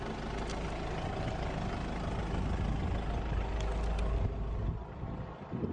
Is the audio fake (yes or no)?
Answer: no